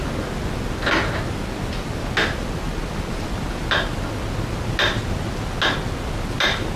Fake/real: real